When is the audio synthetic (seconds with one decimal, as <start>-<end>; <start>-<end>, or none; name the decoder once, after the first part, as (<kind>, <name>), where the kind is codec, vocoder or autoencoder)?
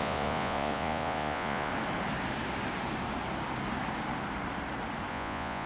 0.0-1.7 (vocoder, Vocos); 5.1-5.7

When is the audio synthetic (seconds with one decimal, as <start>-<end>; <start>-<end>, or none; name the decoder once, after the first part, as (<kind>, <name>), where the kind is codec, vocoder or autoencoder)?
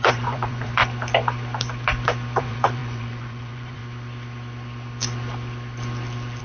0.0-0.8 (vocoder, Vocos); 2.4-3.8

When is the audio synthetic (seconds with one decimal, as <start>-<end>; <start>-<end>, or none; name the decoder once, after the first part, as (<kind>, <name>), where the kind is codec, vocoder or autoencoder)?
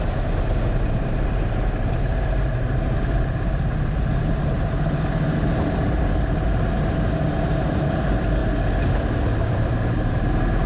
0.0-8.4 (vocoder, BigVGAN v2); 9.4-10.7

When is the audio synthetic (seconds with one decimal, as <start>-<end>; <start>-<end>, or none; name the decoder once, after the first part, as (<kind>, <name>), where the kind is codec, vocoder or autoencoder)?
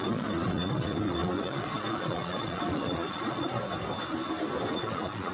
0.0-3.6 (vocoder, Vocos); 4.7-5.3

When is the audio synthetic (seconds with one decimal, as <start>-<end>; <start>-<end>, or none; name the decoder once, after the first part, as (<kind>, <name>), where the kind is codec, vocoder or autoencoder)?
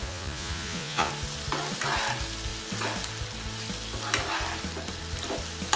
0.0-1.1 (vocoder, Vocos)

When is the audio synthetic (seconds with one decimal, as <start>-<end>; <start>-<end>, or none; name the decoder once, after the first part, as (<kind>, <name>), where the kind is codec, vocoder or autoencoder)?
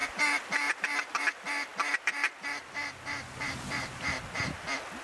none